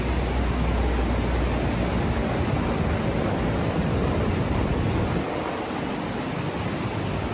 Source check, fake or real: real